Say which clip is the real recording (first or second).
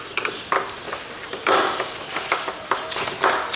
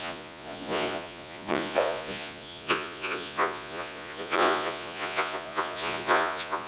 first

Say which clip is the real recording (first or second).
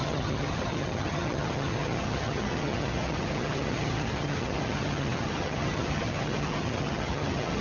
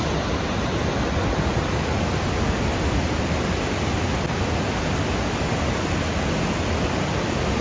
second